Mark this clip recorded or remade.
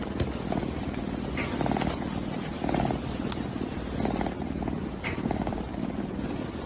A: recorded